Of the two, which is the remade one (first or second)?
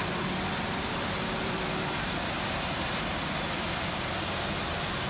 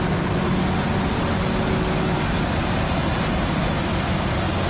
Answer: first